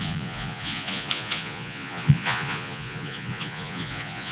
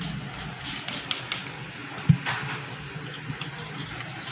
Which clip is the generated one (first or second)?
first